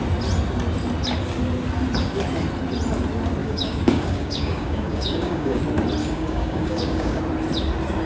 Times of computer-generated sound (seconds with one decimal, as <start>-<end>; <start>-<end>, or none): 3.4-5.6; 6.0-7.2